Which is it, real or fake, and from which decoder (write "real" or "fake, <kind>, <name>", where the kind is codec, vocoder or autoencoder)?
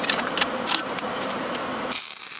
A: fake, vocoder, BigVGAN v2